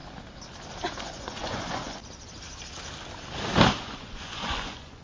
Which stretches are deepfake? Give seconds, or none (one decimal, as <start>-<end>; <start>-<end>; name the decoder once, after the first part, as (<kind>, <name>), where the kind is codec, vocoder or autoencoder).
1.0-2.0 (vocoder, Vocos); 3.8-5.0